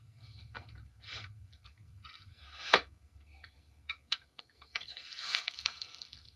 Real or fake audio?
fake